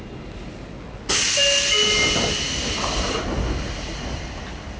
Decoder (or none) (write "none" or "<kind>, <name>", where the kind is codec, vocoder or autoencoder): none